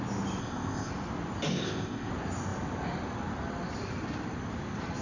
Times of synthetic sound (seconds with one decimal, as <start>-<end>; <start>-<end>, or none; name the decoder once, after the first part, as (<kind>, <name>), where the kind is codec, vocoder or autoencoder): 0.4-0.9 (codec, ZipCodec); 1.5-2.1